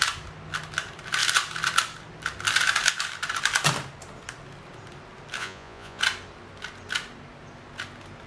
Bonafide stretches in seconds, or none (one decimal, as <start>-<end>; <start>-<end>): 0.0-5.4; 6.0-8.3